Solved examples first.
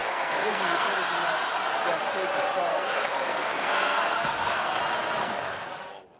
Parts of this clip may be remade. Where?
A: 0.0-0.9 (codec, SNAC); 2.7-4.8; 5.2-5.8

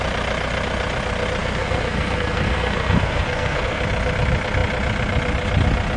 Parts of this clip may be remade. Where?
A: 1.4-3.8 (codec, SNAC)

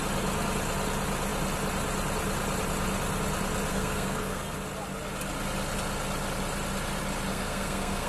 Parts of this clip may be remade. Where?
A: 3.7-4.4 (codec, SNAC); 7.3-8.1

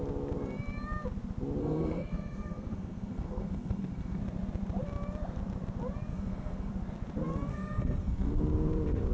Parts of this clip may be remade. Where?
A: 1.6-4.2 (codec, SNAC); 6.1-6.7; 7.5-8.4

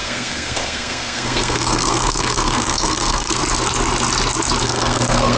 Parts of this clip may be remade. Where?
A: 0.0-3.4 (codec, SNAC); 4.6-5.4

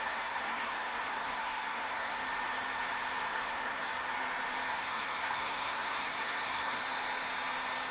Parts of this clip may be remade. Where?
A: 0.0-2.2 (codec, SNAC); 3.3-3.9; 4.7-6.8

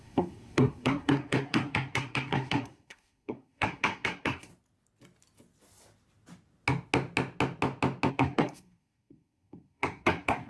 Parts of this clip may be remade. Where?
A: 0.0-4.5 (codec, SNAC); 8.1-10.5

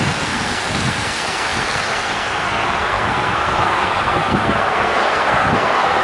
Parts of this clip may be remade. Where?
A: 0.0-6.0 (codec, SNAC)